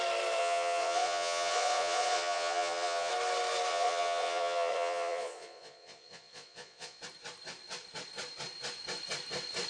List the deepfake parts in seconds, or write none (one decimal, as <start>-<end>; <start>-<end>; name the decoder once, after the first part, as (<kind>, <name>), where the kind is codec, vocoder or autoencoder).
0.4-3.1 (vocoder, Vocos); 3.7-7.0